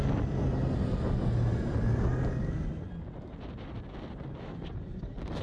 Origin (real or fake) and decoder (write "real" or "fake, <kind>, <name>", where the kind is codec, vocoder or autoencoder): real